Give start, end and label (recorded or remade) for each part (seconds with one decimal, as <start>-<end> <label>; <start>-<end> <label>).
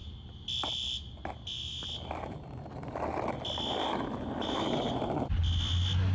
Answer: 0.0-6.1 recorded